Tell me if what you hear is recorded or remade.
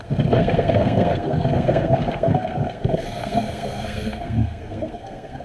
remade